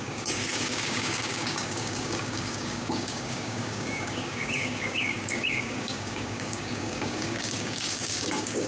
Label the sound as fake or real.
fake